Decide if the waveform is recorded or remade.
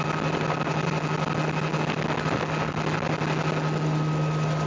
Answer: recorded